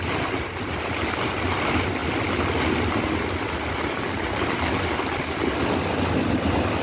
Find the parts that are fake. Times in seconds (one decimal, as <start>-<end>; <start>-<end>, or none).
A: none